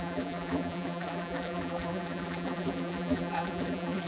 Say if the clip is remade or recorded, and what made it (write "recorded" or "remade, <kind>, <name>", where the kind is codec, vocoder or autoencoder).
remade, vocoder, BigVGAN v2